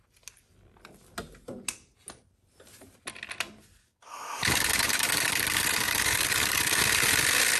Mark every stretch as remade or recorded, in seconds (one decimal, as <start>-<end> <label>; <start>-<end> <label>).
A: 0.0-3.8 recorded; 3.8-6.8 remade; 6.8-7.6 recorded